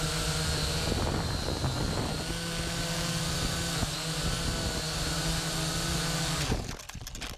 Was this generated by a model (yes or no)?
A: no